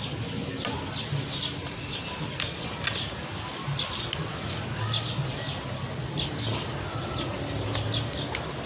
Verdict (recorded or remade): recorded